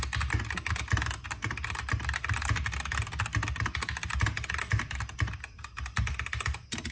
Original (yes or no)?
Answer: yes